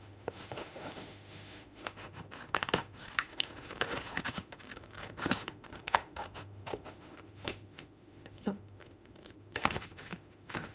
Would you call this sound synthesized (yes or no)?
yes